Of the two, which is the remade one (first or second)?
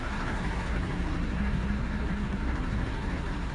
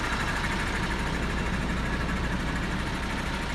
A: first